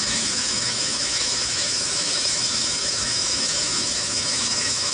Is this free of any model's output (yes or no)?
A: no